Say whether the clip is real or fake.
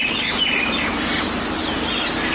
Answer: real